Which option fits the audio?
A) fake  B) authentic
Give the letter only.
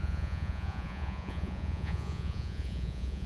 A